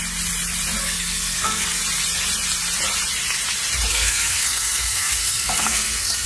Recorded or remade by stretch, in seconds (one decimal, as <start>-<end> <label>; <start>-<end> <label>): 0.0-0.8 recorded; 0.8-1.8 remade; 1.8-3.9 recorded; 3.9-6.3 remade